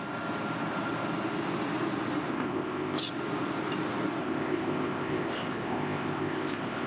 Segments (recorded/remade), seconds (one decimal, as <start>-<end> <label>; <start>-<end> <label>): 0.0-2.3 recorded; 2.3-3.0 remade; 3.0-4.2 recorded; 4.2-6.9 remade